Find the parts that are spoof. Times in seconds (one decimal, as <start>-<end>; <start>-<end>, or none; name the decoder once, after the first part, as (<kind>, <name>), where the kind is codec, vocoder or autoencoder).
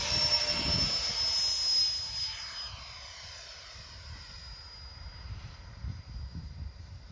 3.5-7.1 (vocoder, BigVGAN v2)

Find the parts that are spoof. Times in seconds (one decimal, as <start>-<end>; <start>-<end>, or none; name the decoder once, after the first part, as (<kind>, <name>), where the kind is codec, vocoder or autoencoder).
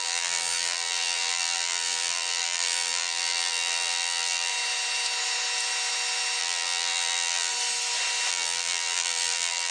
0.0-4.5 (vocoder, BigVGAN v2); 6.4-7.5; 8.3-9.7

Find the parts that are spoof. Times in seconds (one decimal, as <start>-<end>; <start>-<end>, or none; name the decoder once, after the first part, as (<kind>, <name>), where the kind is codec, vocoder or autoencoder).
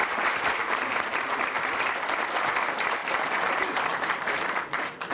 0.0-0.5 (vocoder, BigVGAN v2); 3.0-5.1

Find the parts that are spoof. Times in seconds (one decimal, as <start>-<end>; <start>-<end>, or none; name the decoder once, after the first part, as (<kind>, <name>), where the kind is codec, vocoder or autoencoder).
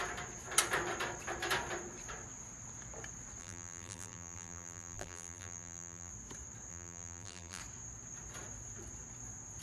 3.4-6.1 (vocoder, BigVGAN v2); 6.7-7.6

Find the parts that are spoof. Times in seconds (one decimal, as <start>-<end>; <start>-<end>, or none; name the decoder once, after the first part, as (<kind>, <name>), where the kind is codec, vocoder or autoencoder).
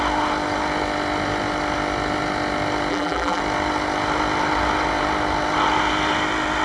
2.9-3.4 (vocoder, BigVGAN v2)